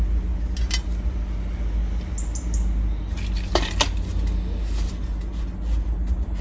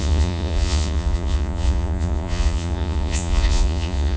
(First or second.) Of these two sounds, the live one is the first